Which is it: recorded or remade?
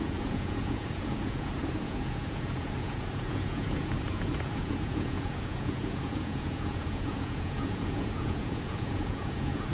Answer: remade